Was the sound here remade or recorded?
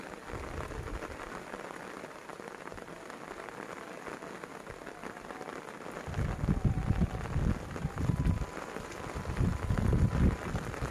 recorded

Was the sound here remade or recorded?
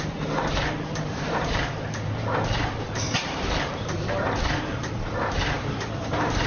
remade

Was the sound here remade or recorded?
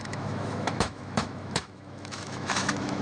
remade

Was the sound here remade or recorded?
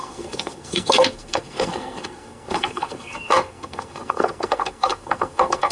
remade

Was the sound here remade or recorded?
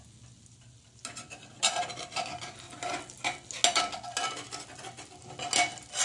recorded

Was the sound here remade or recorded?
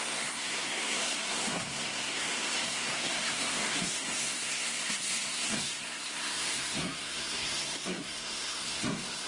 remade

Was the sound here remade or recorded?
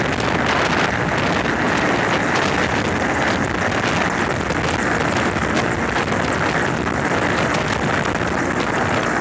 recorded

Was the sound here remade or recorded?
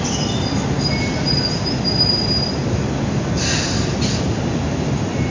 recorded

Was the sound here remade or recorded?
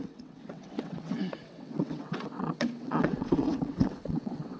remade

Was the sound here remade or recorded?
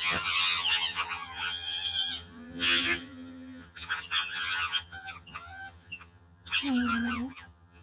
remade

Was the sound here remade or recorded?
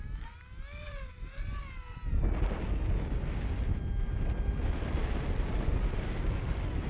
recorded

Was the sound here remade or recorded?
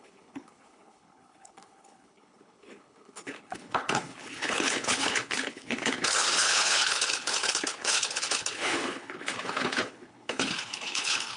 remade